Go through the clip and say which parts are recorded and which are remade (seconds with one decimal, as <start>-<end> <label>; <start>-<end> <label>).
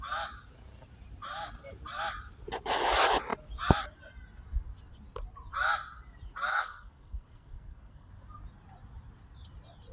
0.0-6.5 recorded; 6.5-8.1 remade; 8.1-9.9 recorded